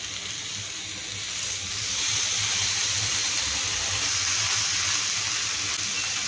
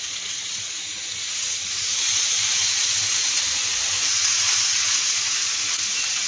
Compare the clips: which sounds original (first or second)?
first